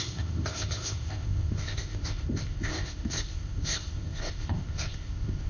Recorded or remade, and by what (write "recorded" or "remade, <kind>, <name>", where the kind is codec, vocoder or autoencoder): remade, codec, ZipCodec